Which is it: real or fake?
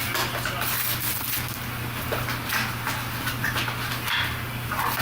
real